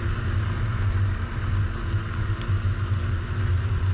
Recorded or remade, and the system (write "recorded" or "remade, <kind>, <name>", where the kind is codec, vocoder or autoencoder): recorded